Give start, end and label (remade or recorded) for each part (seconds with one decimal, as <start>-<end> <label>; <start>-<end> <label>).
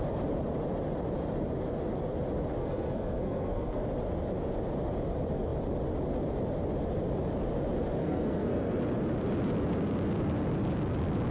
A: 0.0-2.6 recorded; 2.6-3.8 remade; 3.8-8.0 recorded; 8.0-8.7 remade; 8.7-11.3 recorded